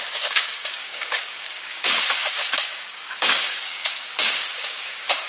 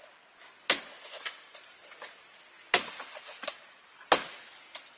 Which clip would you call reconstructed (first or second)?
first